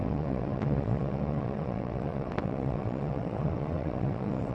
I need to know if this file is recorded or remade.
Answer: remade